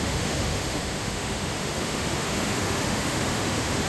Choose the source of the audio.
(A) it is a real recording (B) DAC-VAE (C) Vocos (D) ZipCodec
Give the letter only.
B